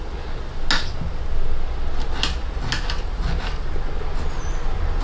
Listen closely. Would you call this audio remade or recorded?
recorded